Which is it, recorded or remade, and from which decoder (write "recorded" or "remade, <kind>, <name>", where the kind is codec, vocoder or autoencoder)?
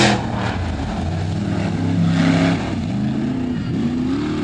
recorded